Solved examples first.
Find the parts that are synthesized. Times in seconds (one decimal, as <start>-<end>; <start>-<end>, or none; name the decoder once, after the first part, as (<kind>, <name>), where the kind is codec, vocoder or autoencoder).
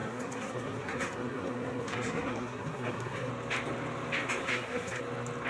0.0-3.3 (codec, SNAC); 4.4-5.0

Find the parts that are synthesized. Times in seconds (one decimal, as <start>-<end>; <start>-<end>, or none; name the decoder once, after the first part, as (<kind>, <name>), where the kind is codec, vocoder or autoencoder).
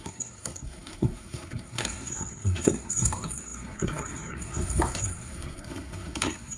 0.0-6.6 (codec, SNAC)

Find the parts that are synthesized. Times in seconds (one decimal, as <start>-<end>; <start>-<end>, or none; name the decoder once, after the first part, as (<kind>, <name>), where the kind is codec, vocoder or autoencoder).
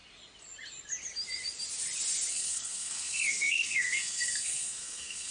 2.3-5.3 (codec, SNAC)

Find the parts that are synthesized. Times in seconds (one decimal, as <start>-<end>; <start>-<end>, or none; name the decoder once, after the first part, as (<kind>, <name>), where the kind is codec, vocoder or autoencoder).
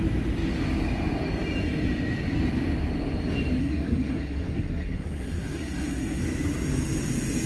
3.6-6.2 (codec, SNAC)